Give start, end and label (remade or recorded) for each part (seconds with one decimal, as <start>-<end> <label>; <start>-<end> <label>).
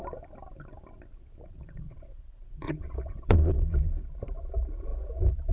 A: 0.0-1.4 recorded; 1.4-4.0 remade; 4.0-5.5 recorded